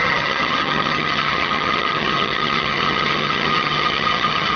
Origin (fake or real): fake